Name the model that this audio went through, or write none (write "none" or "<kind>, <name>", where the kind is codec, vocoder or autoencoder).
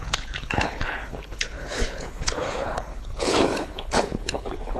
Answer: codec, HILCodec